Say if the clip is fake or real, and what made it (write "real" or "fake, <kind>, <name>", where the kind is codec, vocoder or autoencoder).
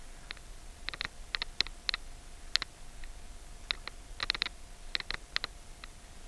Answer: real